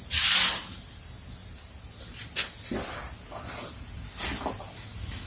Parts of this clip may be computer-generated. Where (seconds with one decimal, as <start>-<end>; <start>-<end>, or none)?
none